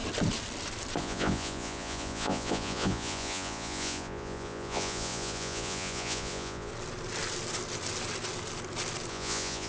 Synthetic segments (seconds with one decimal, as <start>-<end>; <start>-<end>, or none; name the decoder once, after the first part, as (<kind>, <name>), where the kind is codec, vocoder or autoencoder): 1.0-6.7 (vocoder, Vocos); 9.1-9.7